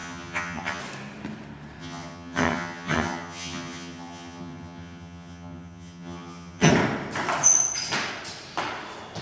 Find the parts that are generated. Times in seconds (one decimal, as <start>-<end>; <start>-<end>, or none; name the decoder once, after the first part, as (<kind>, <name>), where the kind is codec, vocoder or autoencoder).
0.0-0.8 (vocoder, HiFi-GAN); 1.8-6.7

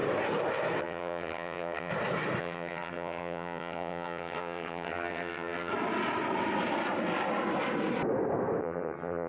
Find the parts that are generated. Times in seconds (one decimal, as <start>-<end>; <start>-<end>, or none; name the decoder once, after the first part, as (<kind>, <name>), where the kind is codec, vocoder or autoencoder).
0.8-1.9 (vocoder, HiFi-GAN); 2.4-5.7; 8.6-9.3

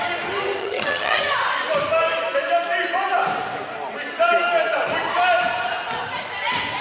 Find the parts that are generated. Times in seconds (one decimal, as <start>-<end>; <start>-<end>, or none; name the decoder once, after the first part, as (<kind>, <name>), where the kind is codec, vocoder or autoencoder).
0.6-1.2 (vocoder, HiFi-GAN)

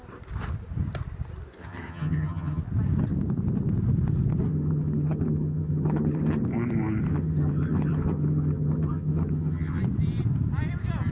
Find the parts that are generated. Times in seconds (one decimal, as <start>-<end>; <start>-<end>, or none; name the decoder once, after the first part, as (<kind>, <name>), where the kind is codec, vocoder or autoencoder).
1.6-2.6 (vocoder, HiFi-GAN); 4.5-6.4; 7.1-9.8

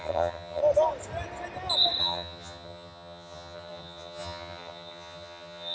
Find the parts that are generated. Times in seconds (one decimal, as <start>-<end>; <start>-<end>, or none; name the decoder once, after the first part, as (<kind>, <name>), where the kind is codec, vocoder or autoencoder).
0.0-0.6 (vocoder, HiFi-GAN); 2.0-5.7

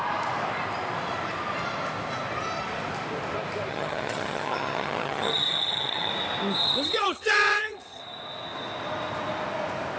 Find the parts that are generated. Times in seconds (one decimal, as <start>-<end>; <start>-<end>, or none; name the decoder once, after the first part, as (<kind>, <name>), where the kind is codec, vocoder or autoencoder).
3.7-6.1 (vocoder, HiFi-GAN); 6.6-8.0